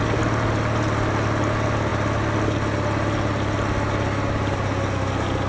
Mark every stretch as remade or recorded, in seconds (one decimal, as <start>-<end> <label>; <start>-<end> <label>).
0.0-5.5 recorded